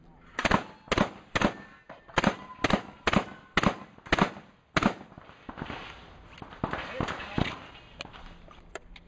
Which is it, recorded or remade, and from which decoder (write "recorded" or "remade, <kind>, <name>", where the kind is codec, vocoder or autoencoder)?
recorded